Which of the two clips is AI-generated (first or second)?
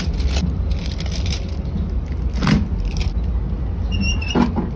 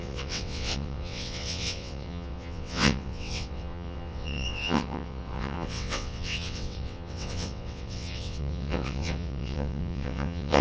second